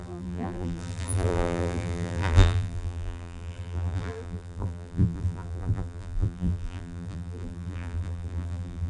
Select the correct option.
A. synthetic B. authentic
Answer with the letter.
A